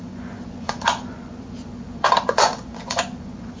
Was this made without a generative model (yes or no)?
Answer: no